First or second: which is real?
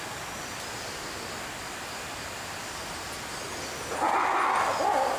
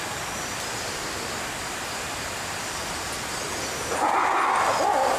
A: first